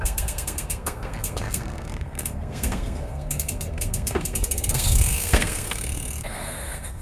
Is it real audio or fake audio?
fake